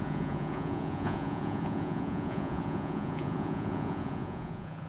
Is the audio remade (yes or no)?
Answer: yes